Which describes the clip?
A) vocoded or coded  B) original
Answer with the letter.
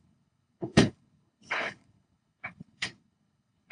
A